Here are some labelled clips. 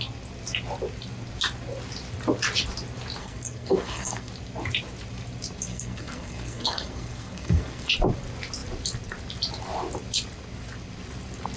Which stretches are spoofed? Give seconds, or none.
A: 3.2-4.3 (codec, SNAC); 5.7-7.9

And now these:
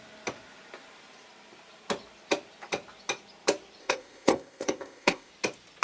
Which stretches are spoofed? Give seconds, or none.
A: 3.8-5.3 (codec, ZipCodec)

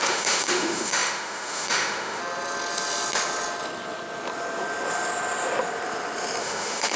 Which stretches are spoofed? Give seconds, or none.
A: 0.0-2.2 (autoencoder, DAC-VAE); 6.4-7.0